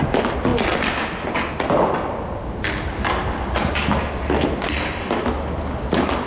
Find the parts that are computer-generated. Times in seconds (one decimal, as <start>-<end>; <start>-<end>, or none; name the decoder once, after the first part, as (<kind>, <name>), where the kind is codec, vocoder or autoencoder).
none